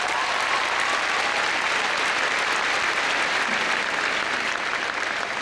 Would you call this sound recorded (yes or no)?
yes